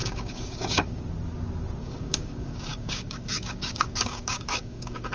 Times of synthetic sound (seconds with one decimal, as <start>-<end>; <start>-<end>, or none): 0.0-1.0; 1.8-5.1